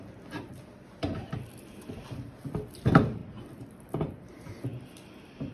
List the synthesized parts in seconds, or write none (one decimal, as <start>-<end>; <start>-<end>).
none